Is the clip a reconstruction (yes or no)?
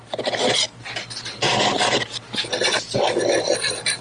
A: no